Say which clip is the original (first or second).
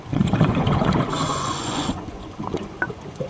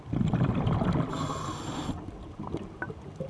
second